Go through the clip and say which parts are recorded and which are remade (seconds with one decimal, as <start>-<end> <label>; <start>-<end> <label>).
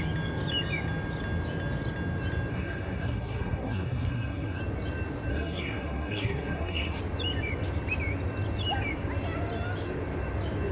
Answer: 0.0-2.5 recorded; 2.5-4.6 remade; 4.6-5.3 recorded; 5.3-7.0 remade; 7.0-10.7 recorded